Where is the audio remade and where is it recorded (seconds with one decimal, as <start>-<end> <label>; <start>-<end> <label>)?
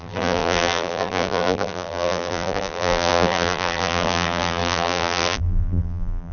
0.0-6.3 remade